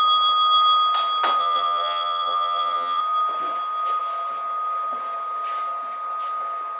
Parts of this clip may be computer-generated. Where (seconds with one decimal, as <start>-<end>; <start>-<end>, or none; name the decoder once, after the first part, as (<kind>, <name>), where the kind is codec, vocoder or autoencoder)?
1.4-3.0 (vocoder, HiFi-GAN)